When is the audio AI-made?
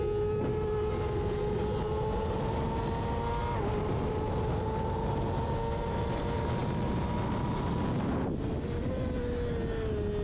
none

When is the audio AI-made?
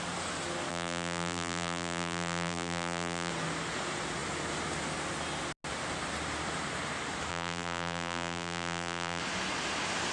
0.7-3.3 (vocoder, BigVGAN v2); 7.3-9.2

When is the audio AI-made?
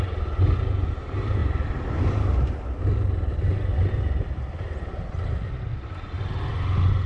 none